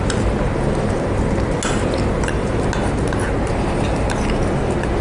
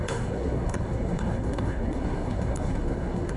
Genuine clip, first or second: first